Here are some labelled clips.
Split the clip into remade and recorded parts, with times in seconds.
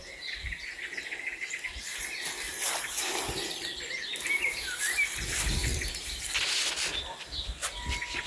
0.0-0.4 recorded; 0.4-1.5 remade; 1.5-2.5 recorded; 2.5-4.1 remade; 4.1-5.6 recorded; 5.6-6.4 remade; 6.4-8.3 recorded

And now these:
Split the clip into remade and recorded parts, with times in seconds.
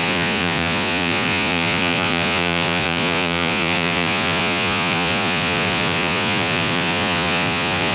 0.0-7.9 remade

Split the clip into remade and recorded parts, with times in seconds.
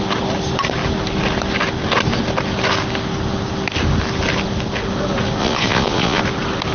0.0-5.4 recorded; 5.4-6.2 remade; 6.2-6.7 recorded